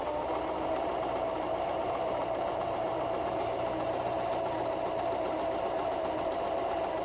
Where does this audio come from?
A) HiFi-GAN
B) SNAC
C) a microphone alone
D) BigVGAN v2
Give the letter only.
D